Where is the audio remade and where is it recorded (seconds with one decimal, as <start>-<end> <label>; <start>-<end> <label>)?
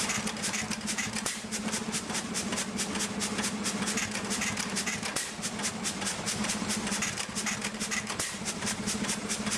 0.0-2.5 remade; 2.5-4.0 recorded; 4.0-5.1 remade; 5.1-6.5 recorded; 6.5-9.6 remade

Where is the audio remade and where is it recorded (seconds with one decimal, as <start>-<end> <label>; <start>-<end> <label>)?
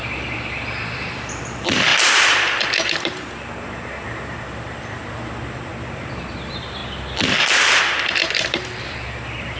0.0-5.7 remade; 5.7-6.3 recorded; 6.3-6.8 remade; 6.8-7.8 recorded; 7.8-9.6 remade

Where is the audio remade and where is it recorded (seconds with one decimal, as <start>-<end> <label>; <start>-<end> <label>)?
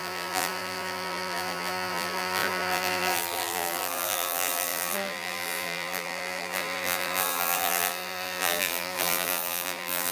0.0-10.1 remade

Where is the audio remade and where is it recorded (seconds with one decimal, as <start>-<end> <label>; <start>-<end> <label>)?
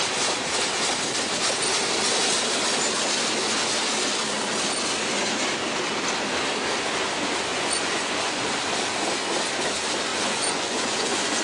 0.0-7.5 recorded; 7.5-8.4 remade; 8.4-10.1 recorded; 10.1-11.4 remade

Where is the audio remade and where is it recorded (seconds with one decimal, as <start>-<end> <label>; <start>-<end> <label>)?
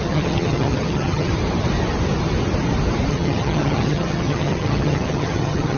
0.0-1.3 remade; 1.3-3.1 recorded; 3.1-5.8 remade